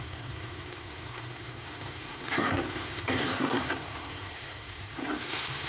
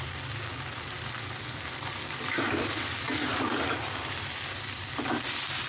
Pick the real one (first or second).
second